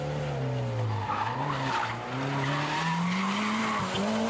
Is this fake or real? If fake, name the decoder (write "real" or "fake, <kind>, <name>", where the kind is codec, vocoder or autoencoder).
real